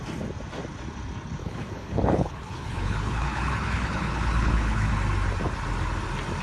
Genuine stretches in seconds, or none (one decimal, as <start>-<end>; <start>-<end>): 0.0-1.4; 4.9-6.4